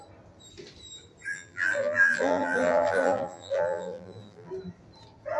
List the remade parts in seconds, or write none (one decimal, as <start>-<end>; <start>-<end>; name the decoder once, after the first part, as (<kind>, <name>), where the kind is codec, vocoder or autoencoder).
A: 1.3-4.5 (vocoder, BigVGAN v2)